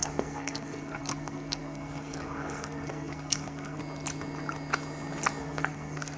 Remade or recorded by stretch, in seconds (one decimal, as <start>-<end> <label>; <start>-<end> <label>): 0.0-3.8 remade; 3.8-5.4 recorded; 5.4-6.2 remade